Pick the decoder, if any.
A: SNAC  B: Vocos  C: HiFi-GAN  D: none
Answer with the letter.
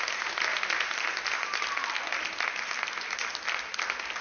D